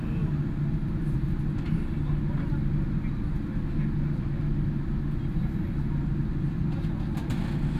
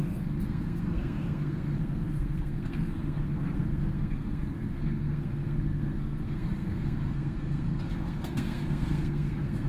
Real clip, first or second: first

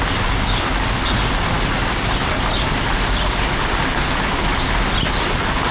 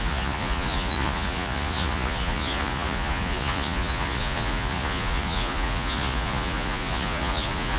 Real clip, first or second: first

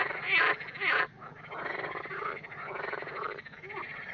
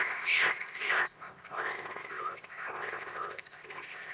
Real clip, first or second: first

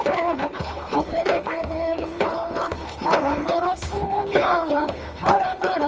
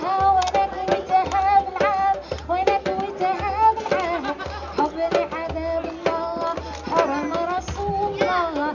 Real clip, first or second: second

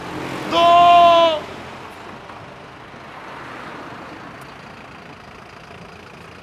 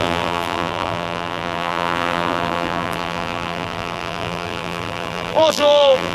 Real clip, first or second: first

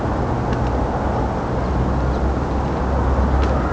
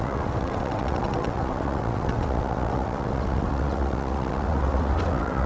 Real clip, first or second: first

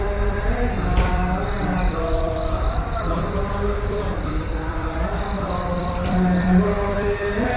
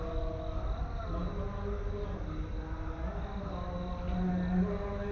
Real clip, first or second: second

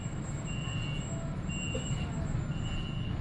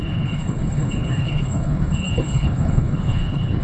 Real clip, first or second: first